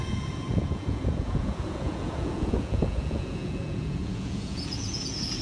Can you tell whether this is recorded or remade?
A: remade